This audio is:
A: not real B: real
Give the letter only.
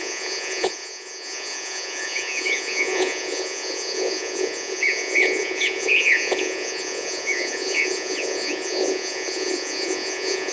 A